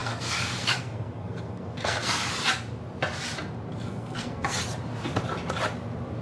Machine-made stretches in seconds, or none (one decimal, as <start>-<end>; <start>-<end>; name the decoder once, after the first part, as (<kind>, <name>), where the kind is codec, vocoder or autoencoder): 0.0-2.3 (codec, SNAC); 3.7-4.6